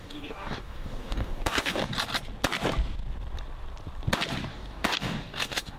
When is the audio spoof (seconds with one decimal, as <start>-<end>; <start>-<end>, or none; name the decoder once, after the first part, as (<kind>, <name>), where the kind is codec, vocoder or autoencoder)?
0.0-1.9 (codec, DAC); 4.5-5.8